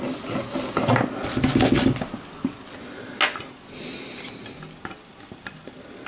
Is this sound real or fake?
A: real